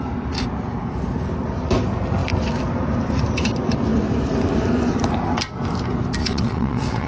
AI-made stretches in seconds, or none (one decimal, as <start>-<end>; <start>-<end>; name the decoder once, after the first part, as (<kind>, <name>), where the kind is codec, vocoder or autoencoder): 6.2-7.1 (vocoder, WaveNeXt)